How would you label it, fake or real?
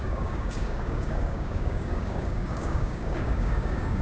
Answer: fake